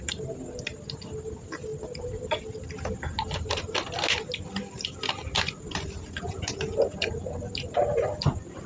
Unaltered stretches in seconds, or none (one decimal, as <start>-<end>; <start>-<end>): 0.0-8.7